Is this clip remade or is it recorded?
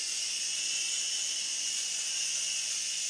remade